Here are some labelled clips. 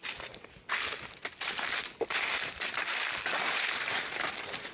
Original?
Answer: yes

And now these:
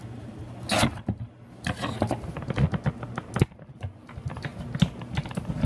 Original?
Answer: yes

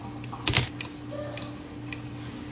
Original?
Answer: yes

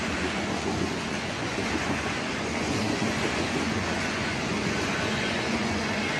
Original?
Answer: no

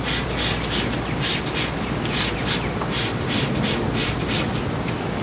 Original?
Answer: yes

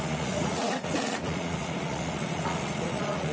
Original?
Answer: no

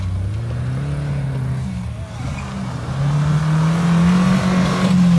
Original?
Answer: yes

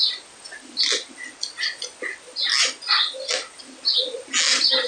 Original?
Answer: yes